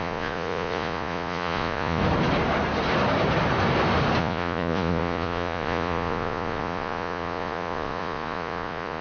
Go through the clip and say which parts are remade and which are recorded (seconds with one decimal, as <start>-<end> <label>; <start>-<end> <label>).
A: 0.0-2.0 remade; 2.0-4.2 recorded; 4.2-9.0 remade